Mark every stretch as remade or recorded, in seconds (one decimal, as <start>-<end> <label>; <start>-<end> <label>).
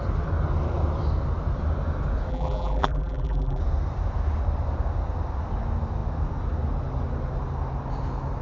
0.0-2.3 recorded; 2.3-3.6 remade; 3.6-8.4 recorded